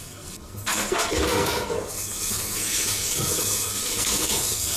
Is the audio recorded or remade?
remade